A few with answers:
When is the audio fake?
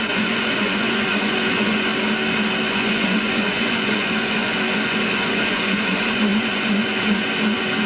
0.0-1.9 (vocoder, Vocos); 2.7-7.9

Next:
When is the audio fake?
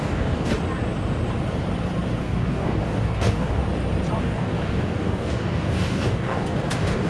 0.0-0.5 (codec, DAC); 2.2-3.6; 4.2-7.1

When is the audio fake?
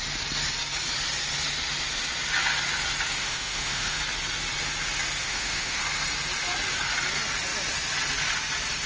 3.2-4.0 (autoencoder, DAC-VAE); 5.2-5.8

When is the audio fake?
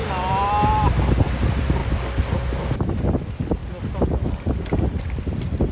none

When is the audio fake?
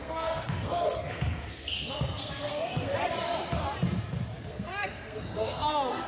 0.0-2.9 (codec, SNAC); 4.5-6.1